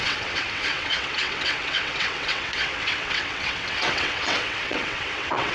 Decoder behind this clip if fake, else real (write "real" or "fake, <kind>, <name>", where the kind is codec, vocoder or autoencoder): fake, vocoder, WaveNeXt